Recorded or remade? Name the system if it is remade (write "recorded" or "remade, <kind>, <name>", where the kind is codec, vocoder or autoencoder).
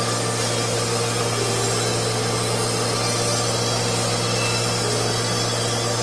recorded